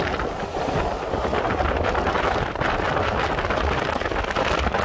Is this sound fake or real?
real